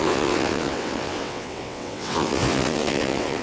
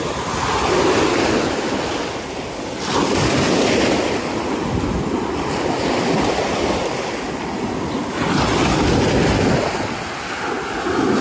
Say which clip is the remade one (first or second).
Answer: first